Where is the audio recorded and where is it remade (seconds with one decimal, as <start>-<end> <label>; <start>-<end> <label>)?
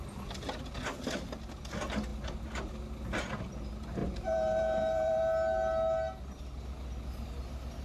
0.0-4.0 recorded; 4.0-5.2 remade; 5.2-7.8 recorded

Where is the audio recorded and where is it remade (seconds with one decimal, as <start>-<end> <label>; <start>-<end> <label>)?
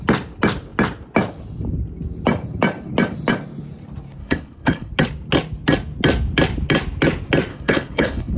0.0-4.2 recorded; 4.2-4.9 remade; 4.9-7.5 recorded; 7.5-8.4 remade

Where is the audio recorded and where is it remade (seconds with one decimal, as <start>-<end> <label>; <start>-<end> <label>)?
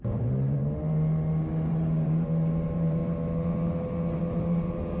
0.0-0.8 remade; 0.8-1.7 recorded; 1.7-3.0 remade; 3.0-4.2 recorded; 4.2-5.0 remade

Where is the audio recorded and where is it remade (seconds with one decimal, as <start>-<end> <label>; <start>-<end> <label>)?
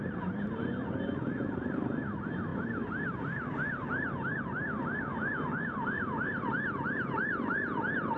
0.0-6.3 remade; 6.3-7.2 recorded; 7.2-8.2 remade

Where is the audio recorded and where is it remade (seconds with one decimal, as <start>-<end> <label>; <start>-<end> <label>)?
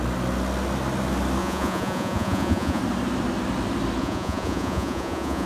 0.0-1.4 recorded; 1.4-2.8 remade; 2.8-4.0 recorded; 4.0-5.5 remade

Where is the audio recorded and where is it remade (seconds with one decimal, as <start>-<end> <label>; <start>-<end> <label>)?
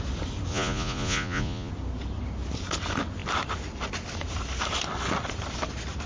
0.0-0.5 recorded; 0.5-1.7 remade; 1.7-6.1 recorded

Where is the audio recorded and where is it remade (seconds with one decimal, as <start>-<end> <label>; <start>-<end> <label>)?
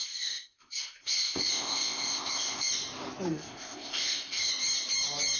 0.0-2.7 remade; 2.7-3.3 recorded; 3.3-4.5 remade; 4.5-5.4 recorded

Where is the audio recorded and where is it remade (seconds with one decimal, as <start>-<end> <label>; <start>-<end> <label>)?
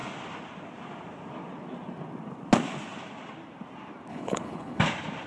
0.0-4.1 recorded; 4.1-4.8 remade; 4.8-5.3 recorded